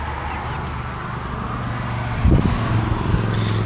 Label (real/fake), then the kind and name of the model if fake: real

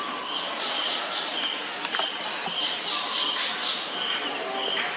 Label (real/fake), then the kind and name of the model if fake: real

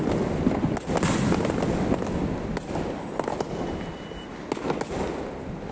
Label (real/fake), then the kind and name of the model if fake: real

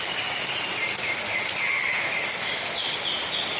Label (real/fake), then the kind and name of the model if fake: real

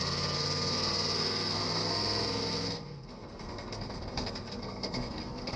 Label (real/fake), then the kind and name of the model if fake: fake, codec, SNAC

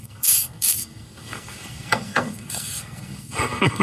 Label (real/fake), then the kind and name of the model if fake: fake, codec, SNAC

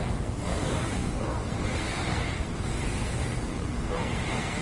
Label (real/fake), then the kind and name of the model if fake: fake, codec, SNAC